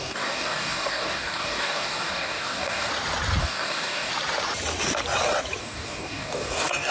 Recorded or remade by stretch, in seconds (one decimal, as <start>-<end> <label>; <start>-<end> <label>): 0.0-2.9 remade; 2.9-3.4 recorded; 3.4-4.1 remade; 4.1-5.6 recorded; 5.6-6.9 remade